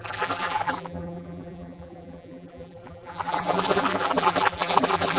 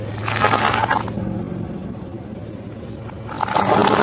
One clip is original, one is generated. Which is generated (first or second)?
first